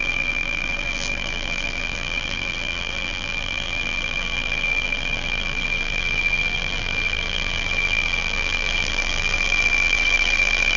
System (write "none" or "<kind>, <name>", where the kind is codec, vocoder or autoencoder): vocoder, BigVGAN v2